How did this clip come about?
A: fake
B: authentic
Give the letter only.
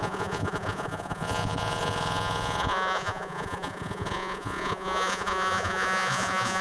A